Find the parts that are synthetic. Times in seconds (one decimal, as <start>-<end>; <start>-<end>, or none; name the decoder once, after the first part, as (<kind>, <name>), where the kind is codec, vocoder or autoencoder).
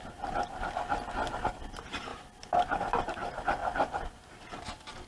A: none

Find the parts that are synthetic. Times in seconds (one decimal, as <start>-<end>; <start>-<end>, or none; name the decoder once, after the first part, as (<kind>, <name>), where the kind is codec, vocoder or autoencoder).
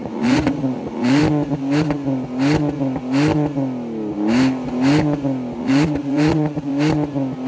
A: 0.0-1.2 (vocoder, Vocos); 5.6-6.7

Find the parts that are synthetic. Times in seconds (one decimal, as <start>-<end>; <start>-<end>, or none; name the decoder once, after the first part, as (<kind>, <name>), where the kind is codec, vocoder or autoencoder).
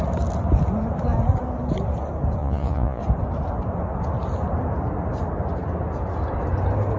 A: 2.4-3.0 (vocoder, Vocos)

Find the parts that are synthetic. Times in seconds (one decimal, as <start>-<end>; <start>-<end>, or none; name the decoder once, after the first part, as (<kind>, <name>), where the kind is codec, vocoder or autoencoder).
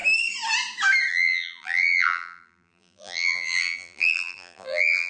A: 1.1-5.1 (vocoder, BigVGAN v2)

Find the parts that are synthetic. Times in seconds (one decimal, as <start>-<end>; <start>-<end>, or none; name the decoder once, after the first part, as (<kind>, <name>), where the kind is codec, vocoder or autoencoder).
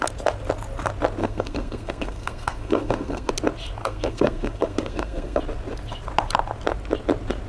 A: 1.2-3.3 (codec, SNAC); 3.8-5.4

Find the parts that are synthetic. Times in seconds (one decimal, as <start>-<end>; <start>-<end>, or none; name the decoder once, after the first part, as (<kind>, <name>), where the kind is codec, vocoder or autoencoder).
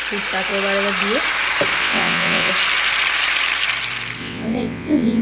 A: 1.8-2.5 (vocoder, WaveNeXt); 4.2-5.2